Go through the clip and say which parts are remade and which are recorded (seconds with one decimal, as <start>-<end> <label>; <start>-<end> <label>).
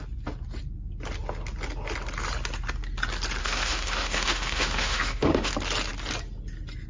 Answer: 0.0-3.4 recorded; 3.4-5.5 remade; 5.5-6.9 recorded